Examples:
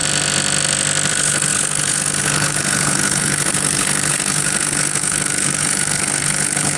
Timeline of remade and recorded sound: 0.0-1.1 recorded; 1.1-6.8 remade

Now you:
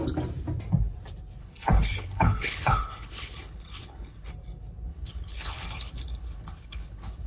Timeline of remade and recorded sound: 0.0-1.4 recorded; 1.4-4.3 remade; 4.3-4.9 recorded; 4.9-7.3 remade

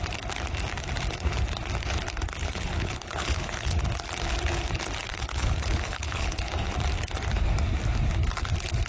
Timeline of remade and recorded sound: 0.0-2.4 recorded; 2.4-3.8 remade; 3.8-5.1 recorded; 5.1-6.5 remade; 6.5-8.9 recorded

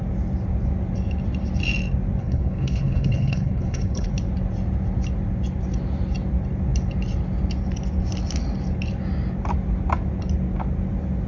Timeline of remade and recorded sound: 0.0-2.2 recorded; 2.2-4.1 remade; 4.1-11.3 recorded

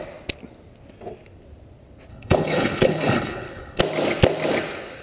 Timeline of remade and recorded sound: 0.0-2.1 recorded; 2.1-3.8 remade; 3.8-5.0 recorded

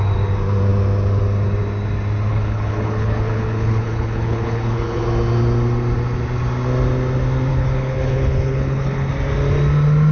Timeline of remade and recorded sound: 0.0-2.3 recorded; 2.3-5.0 remade; 5.0-7.5 recorded; 7.5-9.1 remade; 9.1-10.1 recorded

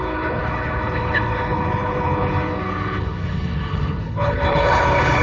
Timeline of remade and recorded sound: 0.0-5.2 remade